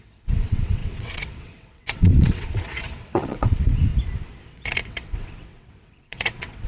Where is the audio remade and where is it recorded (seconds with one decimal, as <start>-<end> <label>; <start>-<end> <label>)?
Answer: 0.0-3.9 remade; 3.9-4.4 recorded; 4.4-6.7 remade